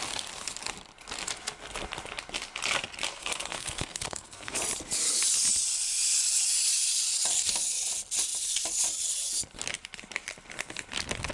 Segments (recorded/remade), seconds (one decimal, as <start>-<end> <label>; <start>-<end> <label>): 0.0-3.1 recorded; 3.1-4.6 remade; 4.6-11.3 recorded